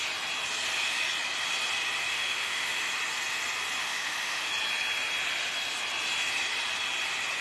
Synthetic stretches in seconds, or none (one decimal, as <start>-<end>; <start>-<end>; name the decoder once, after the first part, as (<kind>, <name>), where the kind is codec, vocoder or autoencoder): 2.1-2.9 (autoencoder, DAC-VAE); 3.8-4.5